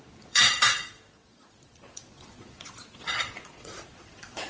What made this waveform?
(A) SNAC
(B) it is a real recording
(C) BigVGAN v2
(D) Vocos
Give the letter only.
D